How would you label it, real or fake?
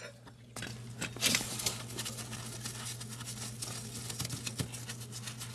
real